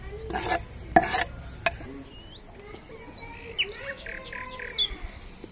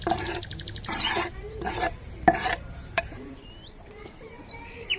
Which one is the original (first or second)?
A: first